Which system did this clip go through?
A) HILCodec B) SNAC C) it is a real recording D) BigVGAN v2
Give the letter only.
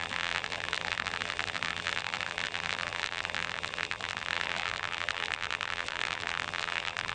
D